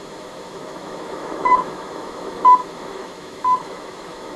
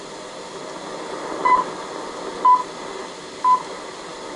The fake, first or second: first